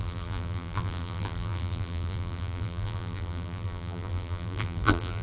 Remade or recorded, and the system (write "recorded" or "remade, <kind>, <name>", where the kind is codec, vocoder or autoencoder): remade, vocoder, BigVGAN v2